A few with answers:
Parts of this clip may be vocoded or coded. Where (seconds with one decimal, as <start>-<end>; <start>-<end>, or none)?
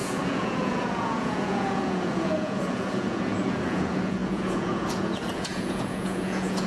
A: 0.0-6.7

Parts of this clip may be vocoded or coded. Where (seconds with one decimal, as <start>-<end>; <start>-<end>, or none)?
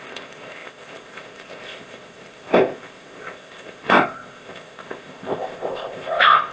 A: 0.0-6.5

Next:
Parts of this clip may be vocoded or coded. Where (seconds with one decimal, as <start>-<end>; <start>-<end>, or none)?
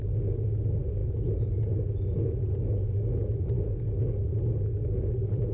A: 1.0-1.8; 3.2-3.7